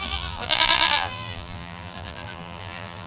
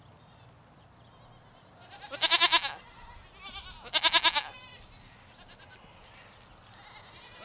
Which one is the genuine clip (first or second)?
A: second